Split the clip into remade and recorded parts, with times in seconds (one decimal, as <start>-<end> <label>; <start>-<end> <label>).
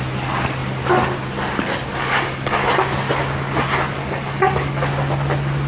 0.0-1.9 recorded; 1.9-2.7 remade; 2.7-4.0 recorded; 4.0-4.8 remade; 4.8-5.7 recorded